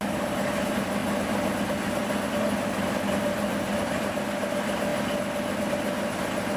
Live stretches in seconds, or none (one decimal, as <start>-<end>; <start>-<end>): 0.0-6.6